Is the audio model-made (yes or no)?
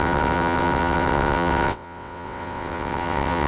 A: yes